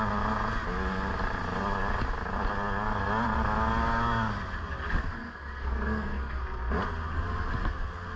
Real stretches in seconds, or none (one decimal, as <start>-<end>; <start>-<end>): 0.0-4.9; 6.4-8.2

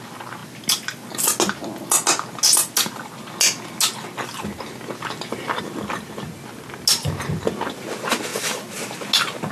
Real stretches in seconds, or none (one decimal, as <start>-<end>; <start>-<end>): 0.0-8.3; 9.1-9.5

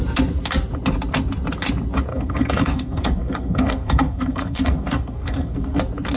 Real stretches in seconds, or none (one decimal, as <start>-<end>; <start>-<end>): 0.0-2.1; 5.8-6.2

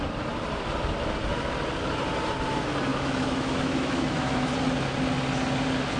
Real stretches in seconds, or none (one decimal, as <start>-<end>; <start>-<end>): 0.0-2.9; 4.5-6.0

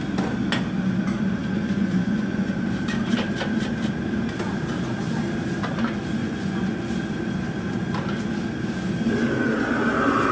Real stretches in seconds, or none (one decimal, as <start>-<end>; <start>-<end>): 0.0-1.4; 2.5-6.2; 6.9-10.3